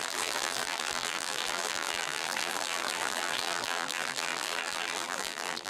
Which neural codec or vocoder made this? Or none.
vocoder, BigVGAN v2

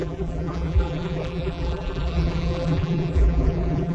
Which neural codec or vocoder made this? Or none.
vocoder, BigVGAN v2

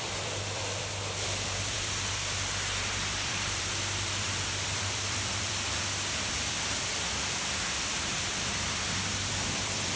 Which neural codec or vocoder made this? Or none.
vocoder, BigVGAN v2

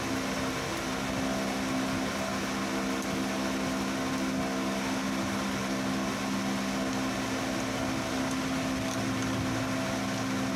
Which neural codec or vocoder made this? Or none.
none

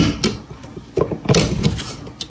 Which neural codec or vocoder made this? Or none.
none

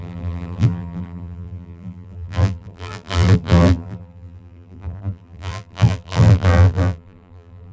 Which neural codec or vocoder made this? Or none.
vocoder, BigVGAN v2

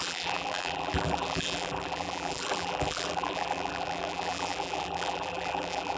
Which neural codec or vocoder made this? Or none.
vocoder, BigVGAN v2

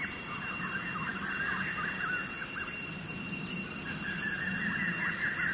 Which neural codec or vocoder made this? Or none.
none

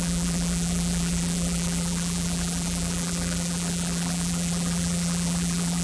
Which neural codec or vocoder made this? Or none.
vocoder, BigVGAN v2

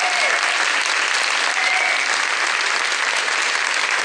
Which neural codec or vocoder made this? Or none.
none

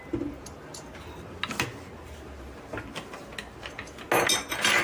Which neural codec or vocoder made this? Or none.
none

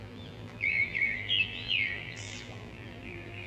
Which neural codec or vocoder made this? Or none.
vocoder, BigVGAN v2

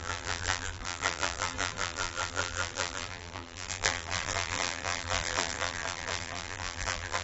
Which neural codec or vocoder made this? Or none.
vocoder, BigVGAN v2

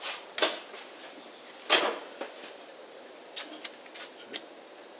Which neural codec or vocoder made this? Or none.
none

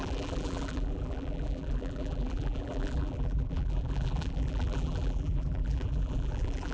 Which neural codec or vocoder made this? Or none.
vocoder, BigVGAN v2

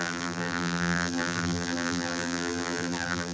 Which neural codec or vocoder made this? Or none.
vocoder, BigVGAN v2